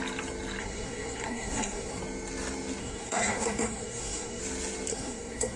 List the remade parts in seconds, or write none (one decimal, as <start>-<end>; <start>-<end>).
0.6-2.0; 2.8-4.4; 4.9-5.6

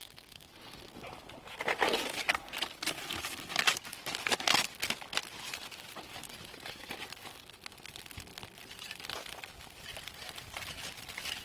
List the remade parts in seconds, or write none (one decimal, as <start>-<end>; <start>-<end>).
0.0-0.5

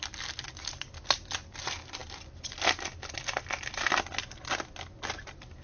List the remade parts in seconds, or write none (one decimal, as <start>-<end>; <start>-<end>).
none

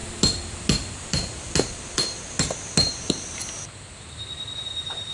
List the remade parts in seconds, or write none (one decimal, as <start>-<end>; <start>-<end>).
none

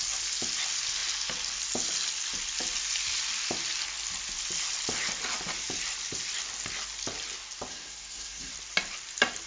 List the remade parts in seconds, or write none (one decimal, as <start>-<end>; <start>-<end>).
7.7-8.5

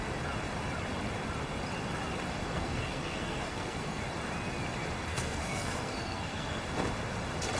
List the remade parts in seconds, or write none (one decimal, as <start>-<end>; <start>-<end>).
2.5-4.0; 5.1-6.6

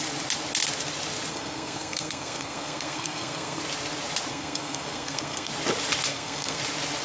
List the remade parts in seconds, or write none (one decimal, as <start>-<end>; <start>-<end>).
1.3-3.6; 4.3-5.5; 6.1-6.6

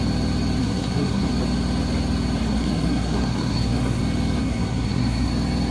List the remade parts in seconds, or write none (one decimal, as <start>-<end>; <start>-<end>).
0.6-1.3; 2.4-4.0; 4.4-5.3